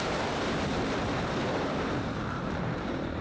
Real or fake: fake